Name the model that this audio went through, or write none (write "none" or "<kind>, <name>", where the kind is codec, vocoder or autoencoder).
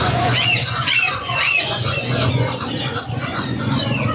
vocoder, Vocos